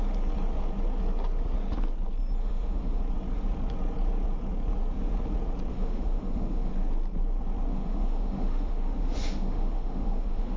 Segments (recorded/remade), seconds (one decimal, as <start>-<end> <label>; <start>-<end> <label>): 0.0-2.4 recorded; 2.4-3.0 remade; 3.0-5.7 recorded; 5.7-6.7 remade; 6.7-7.7 recorded; 7.7-10.6 remade